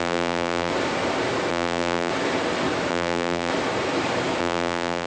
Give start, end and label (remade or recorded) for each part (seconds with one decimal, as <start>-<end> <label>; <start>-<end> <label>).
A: 0.0-0.7 remade; 0.7-1.5 recorded; 1.5-2.1 remade; 2.1-2.9 recorded; 2.9-3.5 remade; 3.5-4.4 recorded; 4.4-5.1 remade